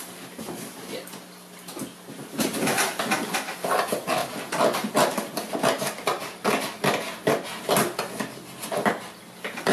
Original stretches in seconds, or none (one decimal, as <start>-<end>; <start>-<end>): 0.0-9.7